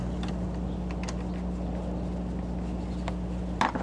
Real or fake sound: real